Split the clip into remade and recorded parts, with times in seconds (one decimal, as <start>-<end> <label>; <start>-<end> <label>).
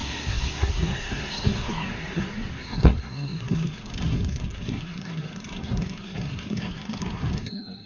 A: 0.0-7.9 remade